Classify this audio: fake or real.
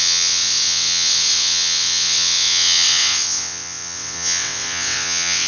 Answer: fake